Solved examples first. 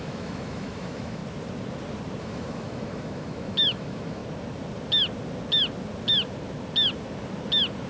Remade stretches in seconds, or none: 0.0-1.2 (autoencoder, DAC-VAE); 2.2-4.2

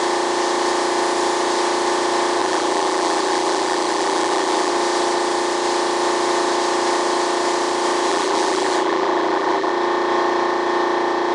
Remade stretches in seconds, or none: 2.4-4.7 (vocoder, BigVGAN v2); 8.1-9.7

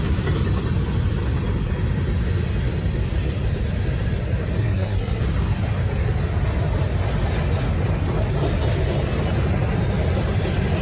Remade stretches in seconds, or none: 4.6-5.2 (codec, SNAC)